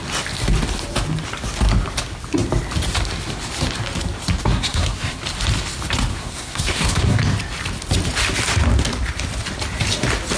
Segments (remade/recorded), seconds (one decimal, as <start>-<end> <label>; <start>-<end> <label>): 0.0-4.4 recorded; 4.4-5.2 remade; 5.2-6.1 recorded; 6.1-7.2 remade; 7.2-10.4 recorded